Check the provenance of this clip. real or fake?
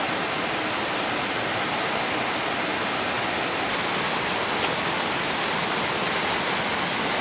real